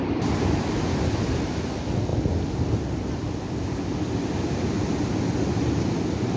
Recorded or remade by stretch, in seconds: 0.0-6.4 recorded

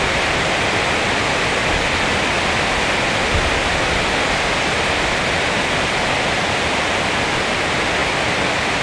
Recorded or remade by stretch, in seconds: 0.0-8.8 recorded

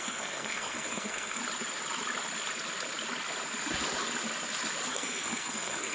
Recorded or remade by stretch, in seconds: 0.0-1.4 remade; 1.4-4.9 recorded; 4.9-5.9 remade

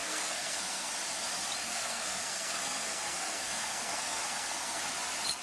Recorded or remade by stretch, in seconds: 0.0-0.9 remade; 0.9-1.6 recorded; 1.6-4.8 remade; 4.8-5.4 recorded

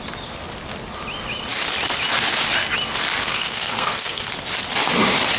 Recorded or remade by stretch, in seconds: 0.0-3.3 recorded; 3.3-4.3 remade; 4.3-5.4 recorded

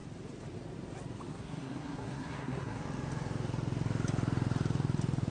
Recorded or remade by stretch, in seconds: 0.0-1.3 recorded; 1.3-2.8 remade; 2.8-5.3 recorded

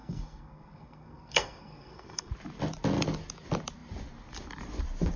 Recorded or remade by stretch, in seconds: 0.0-2.3 remade; 2.3-5.2 recorded